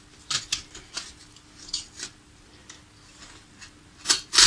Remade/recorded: recorded